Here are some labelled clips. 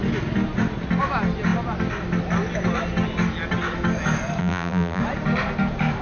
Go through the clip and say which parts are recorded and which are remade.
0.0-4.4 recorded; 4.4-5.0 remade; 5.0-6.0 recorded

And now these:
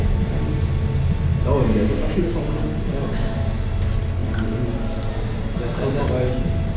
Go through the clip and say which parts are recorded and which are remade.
0.0-1.6 recorded; 1.6-2.2 remade; 2.2-6.8 recorded

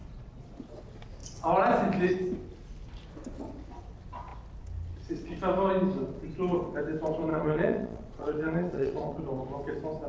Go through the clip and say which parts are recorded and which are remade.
0.0-0.6 remade; 0.6-7.3 recorded; 7.3-9.2 remade; 9.2-10.1 recorded

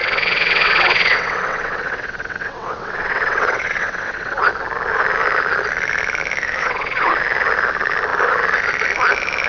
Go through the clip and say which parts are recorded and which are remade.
0.0-4.5 remade; 4.5-6.6 recorded; 6.6-7.1 remade; 7.1-9.5 recorded

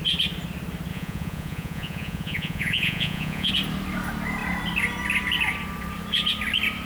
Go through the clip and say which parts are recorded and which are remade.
0.0-0.9 recorded; 0.9-3.5 remade; 3.5-6.9 recorded